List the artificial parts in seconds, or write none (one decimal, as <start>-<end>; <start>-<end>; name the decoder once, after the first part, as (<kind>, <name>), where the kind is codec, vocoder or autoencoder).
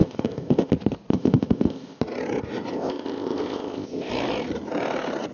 0.0-0.7 (codec, ZipCodec); 1.1-2.0; 2.7-4.1